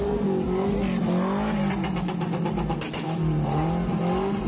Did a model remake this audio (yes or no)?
no